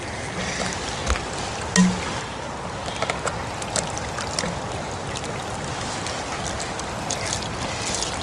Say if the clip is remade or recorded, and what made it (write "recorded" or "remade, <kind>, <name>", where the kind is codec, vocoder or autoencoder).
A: recorded